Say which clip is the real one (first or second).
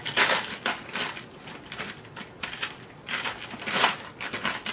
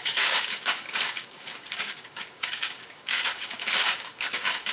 first